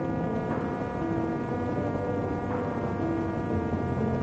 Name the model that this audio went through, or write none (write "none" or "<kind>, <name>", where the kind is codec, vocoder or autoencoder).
none